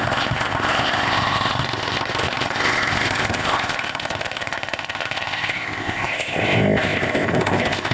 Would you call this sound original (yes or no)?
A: no